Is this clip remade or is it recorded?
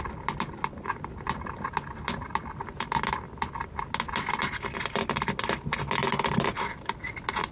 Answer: recorded